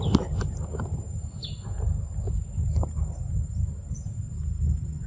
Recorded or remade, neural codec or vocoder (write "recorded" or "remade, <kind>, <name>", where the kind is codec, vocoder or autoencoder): recorded